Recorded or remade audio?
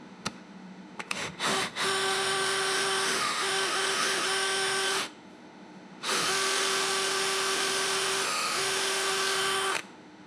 remade